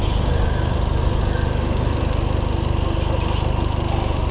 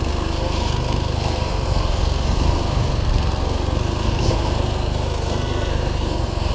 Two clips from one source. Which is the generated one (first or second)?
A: second